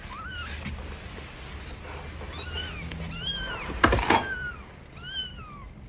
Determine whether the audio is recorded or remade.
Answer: recorded